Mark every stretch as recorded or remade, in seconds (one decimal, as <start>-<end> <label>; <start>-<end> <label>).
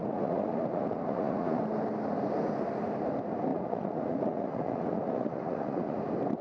0.0-1.6 remade; 1.6-3.5 recorded; 3.5-6.0 remade; 6.0-6.4 recorded